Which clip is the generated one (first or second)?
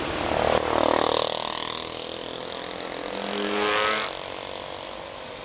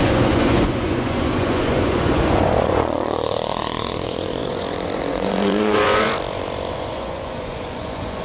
second